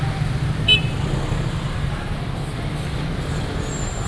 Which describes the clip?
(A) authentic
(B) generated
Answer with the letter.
A